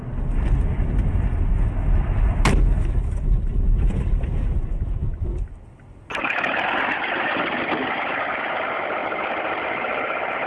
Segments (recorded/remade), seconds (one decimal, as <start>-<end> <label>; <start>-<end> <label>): 0.0-10.5 recorded